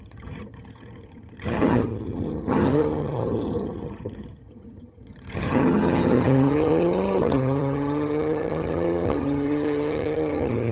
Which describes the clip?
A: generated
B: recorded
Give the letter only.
A